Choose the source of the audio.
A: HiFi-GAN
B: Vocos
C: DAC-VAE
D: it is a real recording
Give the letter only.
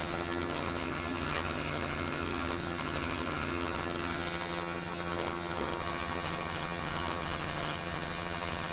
A